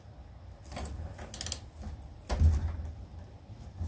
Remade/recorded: recorded